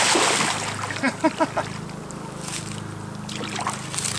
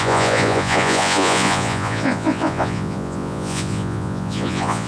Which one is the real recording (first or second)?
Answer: first